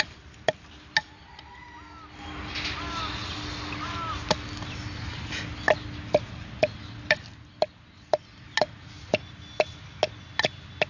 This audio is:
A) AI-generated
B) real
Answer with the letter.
B